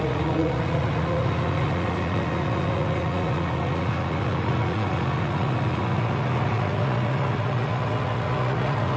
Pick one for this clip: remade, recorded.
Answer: remade